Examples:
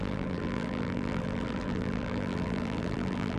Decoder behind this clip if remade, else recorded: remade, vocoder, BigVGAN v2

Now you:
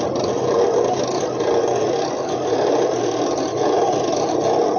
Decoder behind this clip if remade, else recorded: recorded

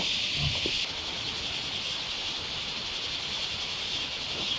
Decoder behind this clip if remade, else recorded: recorded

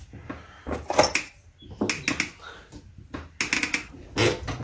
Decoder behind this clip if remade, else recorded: recorded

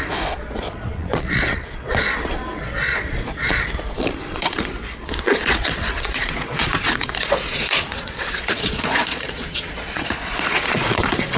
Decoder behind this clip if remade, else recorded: remade, vocoder, Vocos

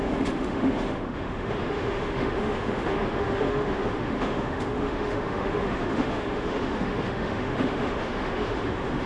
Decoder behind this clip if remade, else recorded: remade, autoencoder, DAC-VAE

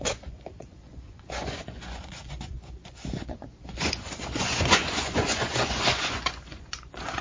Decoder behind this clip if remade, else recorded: remade, vocoder, Vocos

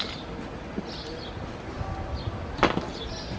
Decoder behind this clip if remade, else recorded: recorded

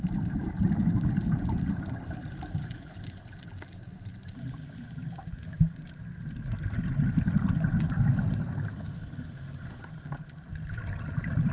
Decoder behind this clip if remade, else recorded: recorded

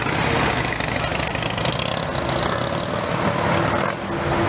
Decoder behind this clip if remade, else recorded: recorded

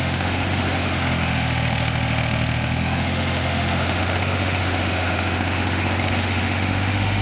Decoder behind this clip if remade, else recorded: remade, autoencoder, DAC-VAE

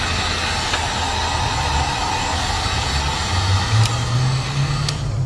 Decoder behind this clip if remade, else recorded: recorded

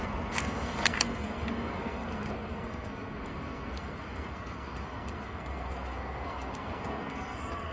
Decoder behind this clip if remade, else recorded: remade, codec, SNAC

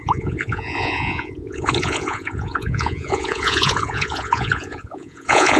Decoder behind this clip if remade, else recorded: remade, vocoder, Vocos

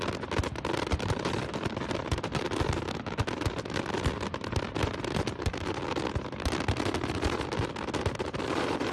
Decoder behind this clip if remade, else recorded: recorded